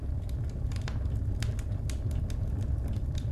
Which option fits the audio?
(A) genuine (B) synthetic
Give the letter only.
A